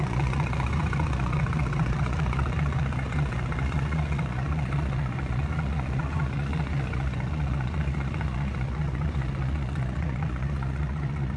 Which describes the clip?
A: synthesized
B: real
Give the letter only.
A